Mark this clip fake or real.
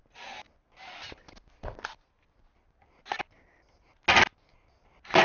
real